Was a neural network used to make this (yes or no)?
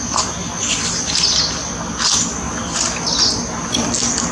no